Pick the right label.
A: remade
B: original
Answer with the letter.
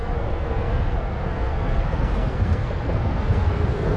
A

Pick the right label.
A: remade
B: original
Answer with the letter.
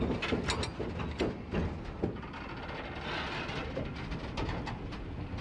B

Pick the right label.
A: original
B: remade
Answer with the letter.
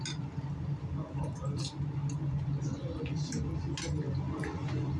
A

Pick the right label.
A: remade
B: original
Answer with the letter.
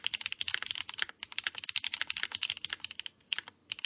B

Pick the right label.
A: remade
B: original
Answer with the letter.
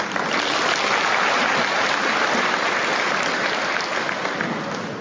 B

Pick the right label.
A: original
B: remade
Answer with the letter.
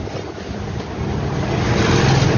A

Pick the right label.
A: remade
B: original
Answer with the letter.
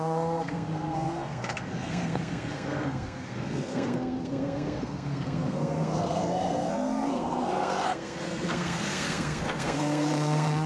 A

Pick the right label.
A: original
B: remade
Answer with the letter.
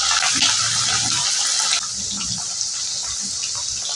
A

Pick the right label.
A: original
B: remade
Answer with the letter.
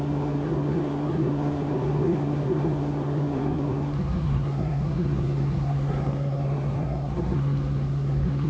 B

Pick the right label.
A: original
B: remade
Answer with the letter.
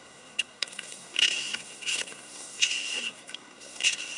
B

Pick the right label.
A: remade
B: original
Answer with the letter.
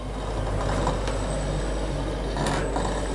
B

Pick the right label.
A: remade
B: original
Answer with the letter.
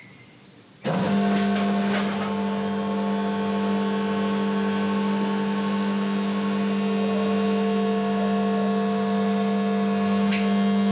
B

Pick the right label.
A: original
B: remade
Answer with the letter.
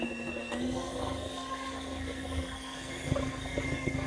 B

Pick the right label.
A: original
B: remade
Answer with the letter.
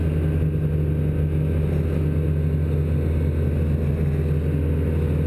A